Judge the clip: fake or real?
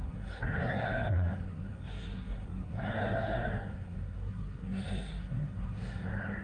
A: fake